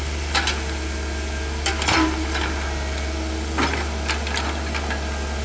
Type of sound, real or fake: real